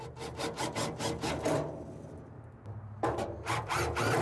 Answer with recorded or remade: recorded